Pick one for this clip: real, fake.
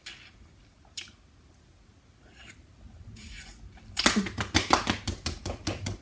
real